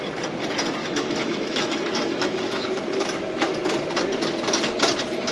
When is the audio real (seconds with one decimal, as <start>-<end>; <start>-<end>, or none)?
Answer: 0.0-0.8; 2.8-5.3